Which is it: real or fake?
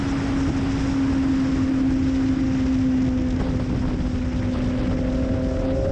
real